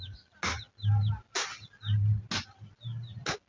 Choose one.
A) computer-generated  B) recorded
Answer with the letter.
B